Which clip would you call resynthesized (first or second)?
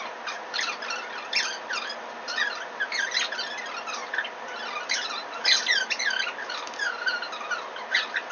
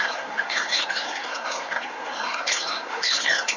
second